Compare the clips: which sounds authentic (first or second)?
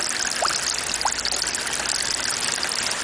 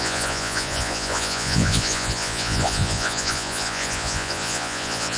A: first